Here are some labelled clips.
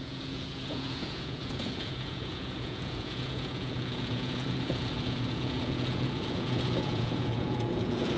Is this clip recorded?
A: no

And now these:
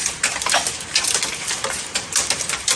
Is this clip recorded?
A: yes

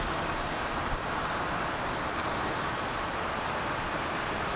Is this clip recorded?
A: yes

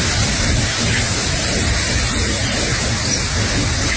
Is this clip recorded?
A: yes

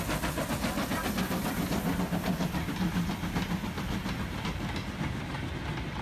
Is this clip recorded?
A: yes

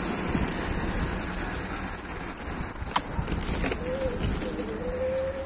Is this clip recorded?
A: yes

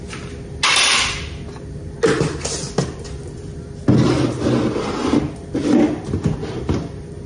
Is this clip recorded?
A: yes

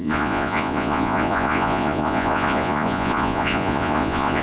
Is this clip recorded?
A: no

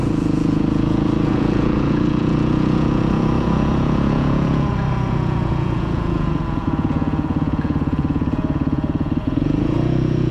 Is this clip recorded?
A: no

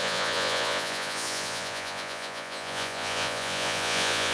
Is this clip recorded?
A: no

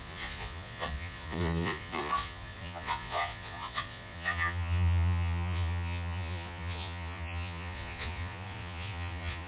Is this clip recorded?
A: no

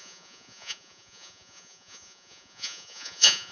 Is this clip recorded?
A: no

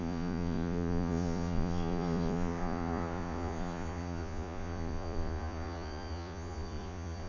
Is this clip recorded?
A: no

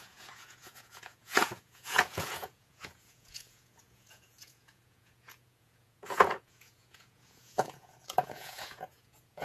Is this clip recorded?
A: no